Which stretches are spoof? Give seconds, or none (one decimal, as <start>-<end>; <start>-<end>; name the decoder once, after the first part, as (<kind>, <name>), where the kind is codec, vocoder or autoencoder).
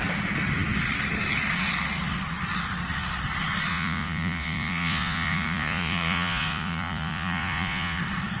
3.7-8.0 (vocoder, Vocos)